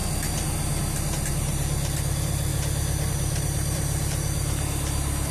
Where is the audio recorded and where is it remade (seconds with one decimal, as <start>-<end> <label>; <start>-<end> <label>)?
0.0-1.3 recorded; 1.3-2.5 remade; 2.5-3.1 recorded; 3.1-5.3 remade